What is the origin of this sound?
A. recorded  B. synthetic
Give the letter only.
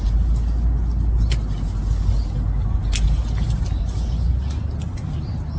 A